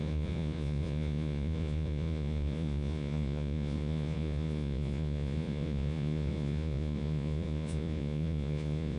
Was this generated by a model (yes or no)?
yes